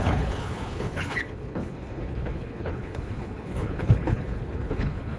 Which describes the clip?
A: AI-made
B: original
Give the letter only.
A